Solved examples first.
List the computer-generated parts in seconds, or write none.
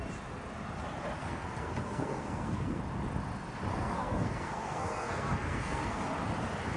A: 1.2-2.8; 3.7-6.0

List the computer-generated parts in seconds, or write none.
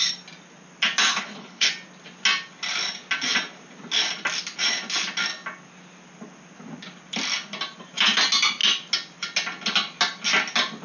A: 1.1-1.7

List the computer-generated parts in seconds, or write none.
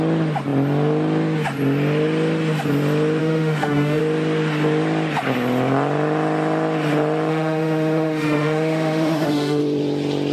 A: 3.2-4.0; 7.3-9.6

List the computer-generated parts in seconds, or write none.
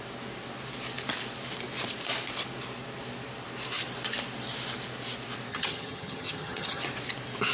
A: 5.5-6.8